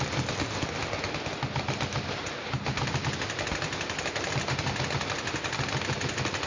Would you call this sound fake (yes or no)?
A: no